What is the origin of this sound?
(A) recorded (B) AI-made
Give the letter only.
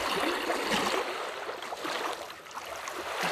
A